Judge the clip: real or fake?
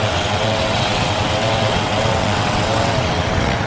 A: fake